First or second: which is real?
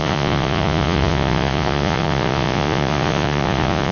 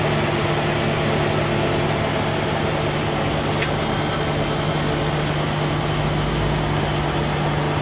second